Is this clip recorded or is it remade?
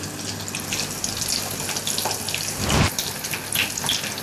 recorded